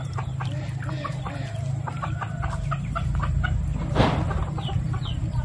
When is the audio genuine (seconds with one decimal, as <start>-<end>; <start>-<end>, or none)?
0.0-5.4